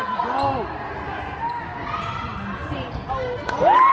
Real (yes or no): yes